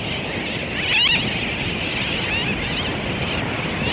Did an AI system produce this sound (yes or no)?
no